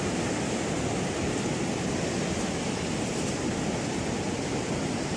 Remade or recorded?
recorded